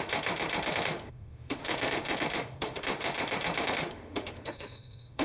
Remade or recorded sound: remade